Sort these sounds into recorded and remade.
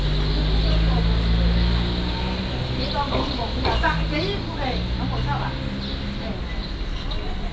recorded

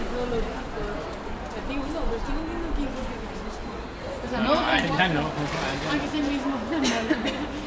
recorded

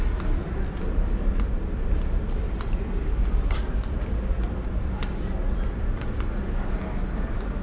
remade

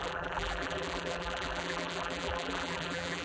remade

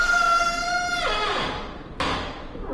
remade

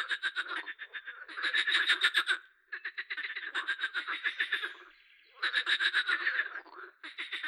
remade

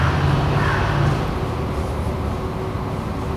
recorded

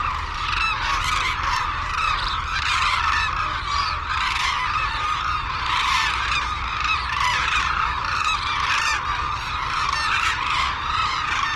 remade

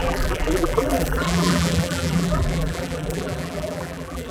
remade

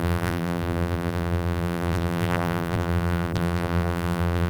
remade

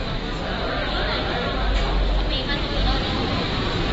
recorded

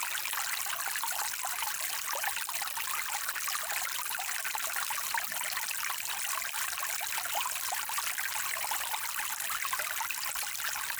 recorded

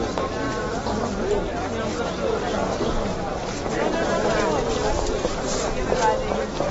recorded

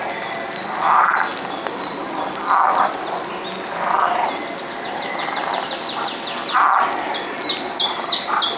recorded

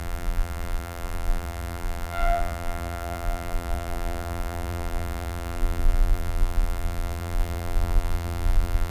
remade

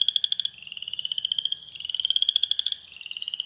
recorded